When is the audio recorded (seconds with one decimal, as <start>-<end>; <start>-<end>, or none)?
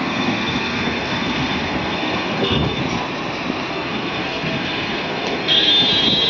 2.8-3.7; 5.7-6.3